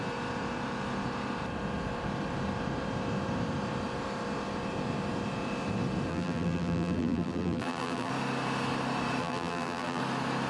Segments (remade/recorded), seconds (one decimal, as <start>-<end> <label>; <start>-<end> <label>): 0.0-6.1 recorded; 6.1-8.1 remade; 8.1-9.2 recorded; 9.2-10.0 remade; 10.0-10.5 recorded